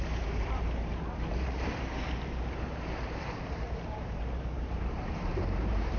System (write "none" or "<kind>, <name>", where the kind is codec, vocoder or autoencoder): vocoder, BigVGAN v2